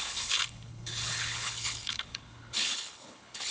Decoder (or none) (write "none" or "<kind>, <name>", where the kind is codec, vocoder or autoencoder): codec, HILCodec